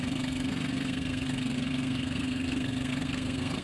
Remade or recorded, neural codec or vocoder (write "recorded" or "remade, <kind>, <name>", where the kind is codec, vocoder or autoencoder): remade, codec, SNAC